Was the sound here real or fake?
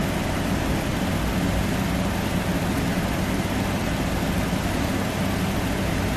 real